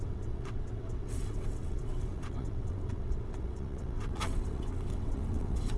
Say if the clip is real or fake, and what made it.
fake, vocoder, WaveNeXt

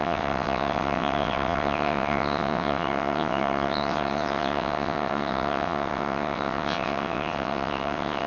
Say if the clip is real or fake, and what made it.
fake, vocoder, WaveNeXt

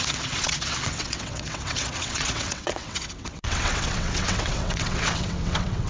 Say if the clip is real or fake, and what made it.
fake, vocoder, WaveNeXt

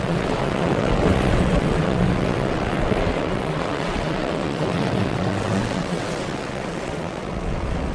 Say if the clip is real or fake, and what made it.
fake, vocoder, WaveNeXt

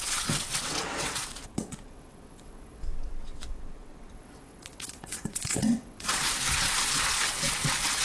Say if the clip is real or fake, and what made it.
fake, vocoder, WaveNeXt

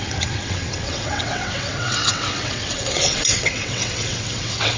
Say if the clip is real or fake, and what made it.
fake, vocoder, WaveNeXt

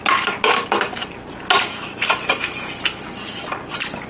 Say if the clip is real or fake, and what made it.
real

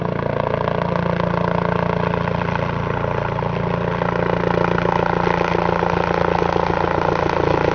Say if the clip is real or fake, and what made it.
real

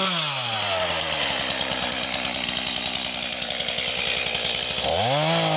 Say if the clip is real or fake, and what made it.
real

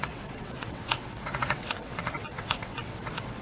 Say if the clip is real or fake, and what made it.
fake, vocoder, WaveNeXt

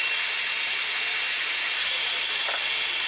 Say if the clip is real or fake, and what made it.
real